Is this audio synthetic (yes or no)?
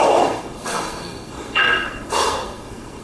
yes